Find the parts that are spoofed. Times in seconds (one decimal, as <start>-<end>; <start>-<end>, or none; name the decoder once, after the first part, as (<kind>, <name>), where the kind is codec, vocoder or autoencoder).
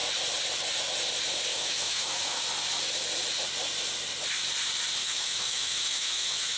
1.5-2.4 (autoencoder, DAC-VAE); 5.0-6.6